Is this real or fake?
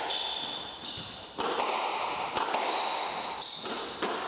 real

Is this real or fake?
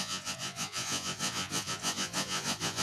fake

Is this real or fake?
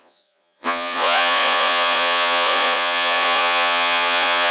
fake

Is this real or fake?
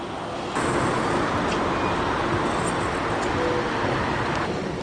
real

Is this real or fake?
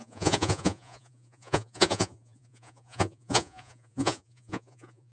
fake